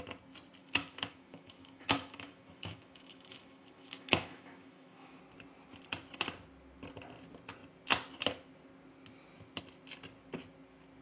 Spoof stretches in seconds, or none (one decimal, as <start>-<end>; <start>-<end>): 0.6-5.2